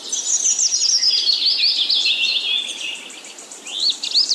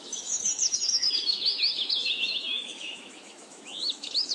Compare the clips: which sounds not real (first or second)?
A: second